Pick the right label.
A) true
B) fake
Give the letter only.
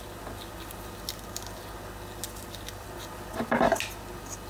A